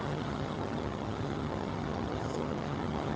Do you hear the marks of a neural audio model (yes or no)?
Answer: yes